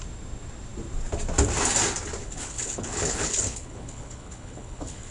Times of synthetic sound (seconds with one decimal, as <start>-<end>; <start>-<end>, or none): 2.2-5.1

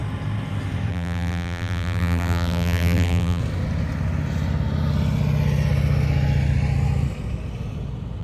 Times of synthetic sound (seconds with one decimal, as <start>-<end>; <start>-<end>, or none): 0.9-3.4

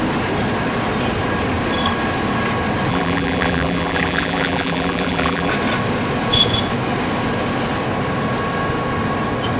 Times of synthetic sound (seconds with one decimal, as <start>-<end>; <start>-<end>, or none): 2.9-5.5

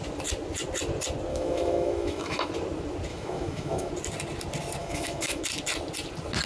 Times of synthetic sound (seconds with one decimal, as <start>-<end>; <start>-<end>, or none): 1.3-2.5; 3.1-3.9; 4.8-5.4

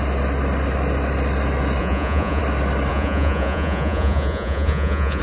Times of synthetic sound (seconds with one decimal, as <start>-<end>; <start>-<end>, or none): 1.8-2.4; 2.9-5.2